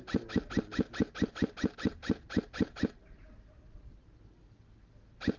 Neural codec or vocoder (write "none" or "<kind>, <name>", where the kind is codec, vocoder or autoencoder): none